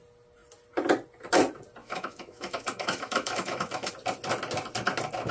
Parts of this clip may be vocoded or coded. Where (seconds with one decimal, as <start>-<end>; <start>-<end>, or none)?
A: 1.8-3.9